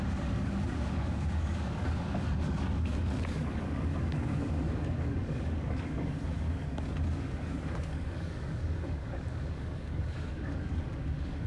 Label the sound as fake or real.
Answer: fake